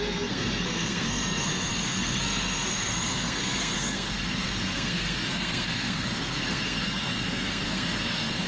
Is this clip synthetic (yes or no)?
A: yes